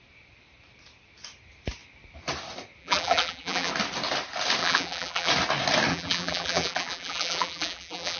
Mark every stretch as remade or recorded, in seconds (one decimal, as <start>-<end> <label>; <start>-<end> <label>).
0.0-2.8 recorded; 2.8-3.7 remade; 3.7-4.6 recorded; 4.6-5.3 remade; 5.3-5.9 recorded; 5.9-8.2 remade